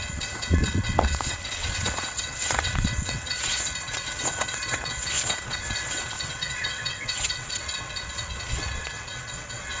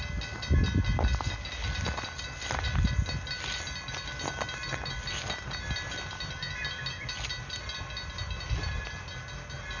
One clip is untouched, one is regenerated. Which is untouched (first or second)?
second